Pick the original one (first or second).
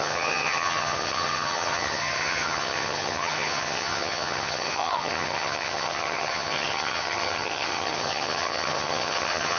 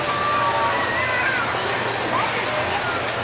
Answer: second